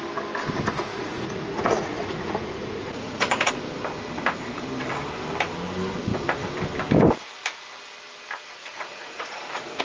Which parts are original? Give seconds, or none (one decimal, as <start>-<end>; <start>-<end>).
0.0-0.9; 3.5-8.6